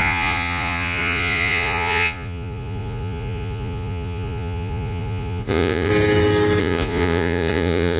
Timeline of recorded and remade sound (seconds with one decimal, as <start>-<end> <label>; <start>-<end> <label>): 0.0-5.9 remade; 5.9-6.6 recorded; 6.6-8.0 remade